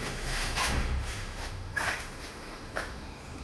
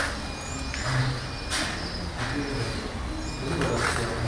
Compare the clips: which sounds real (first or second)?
second